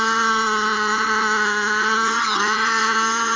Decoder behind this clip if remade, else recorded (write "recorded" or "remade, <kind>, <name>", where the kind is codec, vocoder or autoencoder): remade, vocoder, HiFi-GAN